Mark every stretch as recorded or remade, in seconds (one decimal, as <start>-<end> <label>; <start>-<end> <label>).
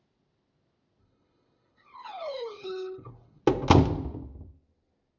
0.0-1.0 recorded; 1.0-3.4 remade; 3.4-5.2 recorded